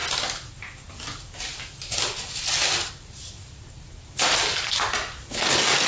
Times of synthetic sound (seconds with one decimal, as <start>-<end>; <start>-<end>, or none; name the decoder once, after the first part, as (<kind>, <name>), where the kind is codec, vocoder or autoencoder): none